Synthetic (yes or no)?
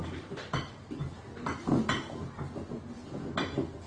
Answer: no